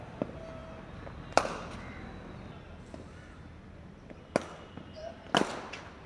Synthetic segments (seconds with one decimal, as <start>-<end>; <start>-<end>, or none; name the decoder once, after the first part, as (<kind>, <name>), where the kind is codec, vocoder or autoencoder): none